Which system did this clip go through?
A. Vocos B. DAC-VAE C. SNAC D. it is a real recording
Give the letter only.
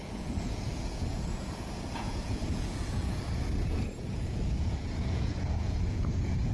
A